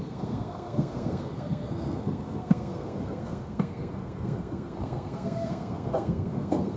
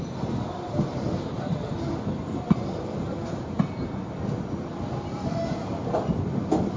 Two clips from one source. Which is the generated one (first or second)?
first